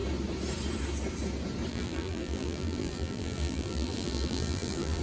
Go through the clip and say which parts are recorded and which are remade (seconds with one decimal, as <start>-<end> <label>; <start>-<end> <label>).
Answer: 0.0-1.7 recorded; 1.7-5.0 remade